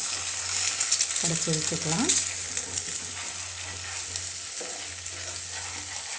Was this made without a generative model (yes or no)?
yes